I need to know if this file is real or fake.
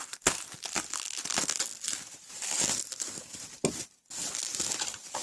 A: real